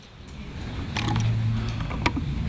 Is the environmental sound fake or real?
real